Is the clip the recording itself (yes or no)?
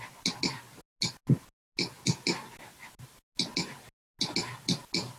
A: yes